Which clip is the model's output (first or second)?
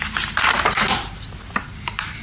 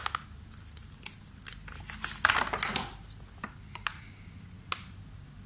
first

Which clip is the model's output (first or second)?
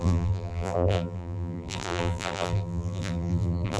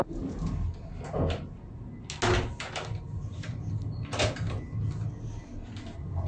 first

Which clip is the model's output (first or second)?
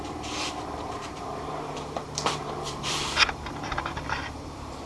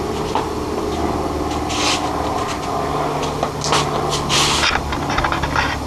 first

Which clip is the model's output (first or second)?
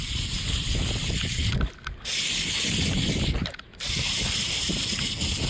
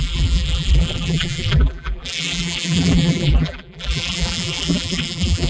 second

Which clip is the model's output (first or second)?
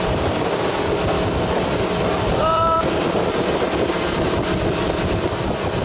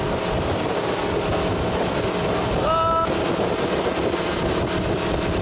first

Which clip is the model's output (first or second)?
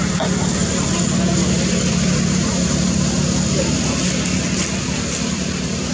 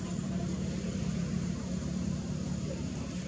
second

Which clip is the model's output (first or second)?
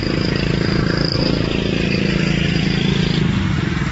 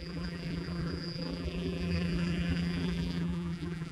second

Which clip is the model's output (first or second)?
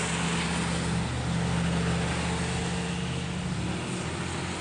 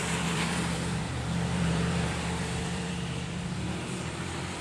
second